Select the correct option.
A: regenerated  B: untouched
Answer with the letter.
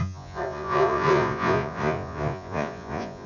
A